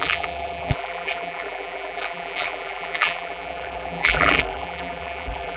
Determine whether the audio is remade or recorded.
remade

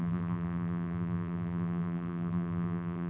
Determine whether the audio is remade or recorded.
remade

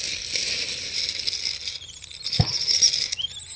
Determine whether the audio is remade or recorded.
recorded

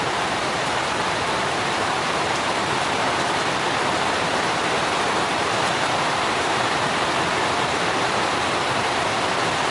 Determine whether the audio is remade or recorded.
remade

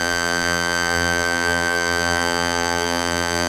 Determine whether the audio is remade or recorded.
remade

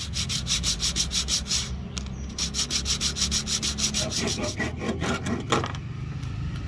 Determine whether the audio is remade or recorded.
recorded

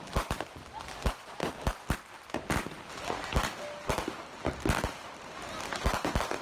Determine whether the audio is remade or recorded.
recorded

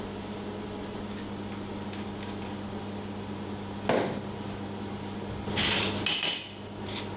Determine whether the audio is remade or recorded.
recorded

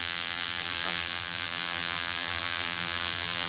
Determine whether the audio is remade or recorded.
remade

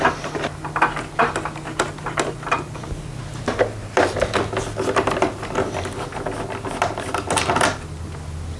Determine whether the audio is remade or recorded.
recorded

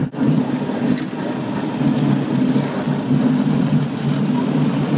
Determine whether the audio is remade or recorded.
recorded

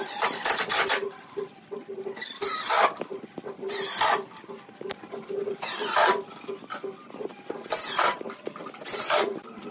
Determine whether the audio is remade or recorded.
remade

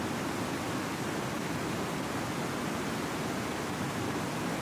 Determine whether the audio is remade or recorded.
recorded